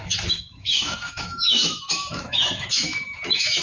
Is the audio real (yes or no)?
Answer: no